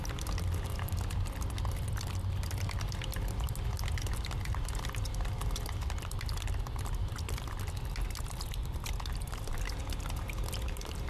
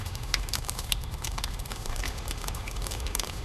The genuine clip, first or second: first